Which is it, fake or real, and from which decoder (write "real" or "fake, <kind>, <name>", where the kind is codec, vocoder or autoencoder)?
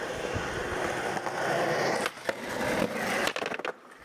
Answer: real